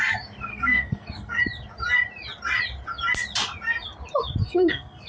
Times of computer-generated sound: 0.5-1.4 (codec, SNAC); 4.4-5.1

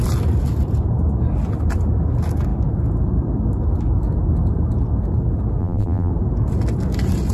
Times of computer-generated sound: 5.6-6.1 (vocoder, BigVGAN v2)

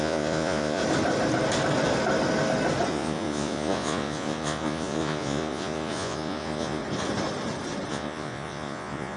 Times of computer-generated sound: 0.0-0.8 (vocoder, Vocos); 2.9-6.8; 7.9-9.2